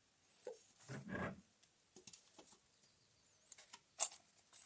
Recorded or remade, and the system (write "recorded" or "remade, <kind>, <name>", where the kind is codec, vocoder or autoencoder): recorded